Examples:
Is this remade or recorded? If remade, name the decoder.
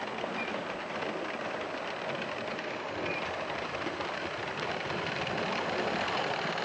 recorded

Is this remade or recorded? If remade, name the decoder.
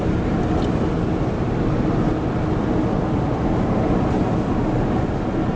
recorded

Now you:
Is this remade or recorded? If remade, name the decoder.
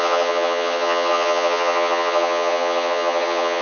remade, vocoder, HiFi-GAN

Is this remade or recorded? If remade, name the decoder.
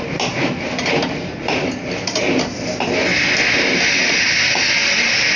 recorded